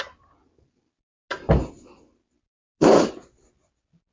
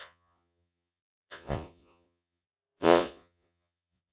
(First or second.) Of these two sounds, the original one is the first